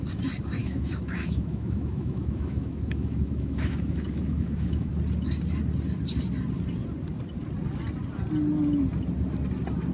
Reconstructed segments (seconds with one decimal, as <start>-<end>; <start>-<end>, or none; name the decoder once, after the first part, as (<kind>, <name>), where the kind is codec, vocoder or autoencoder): 0.6-4.9 (autoencoder, DAC-VAE)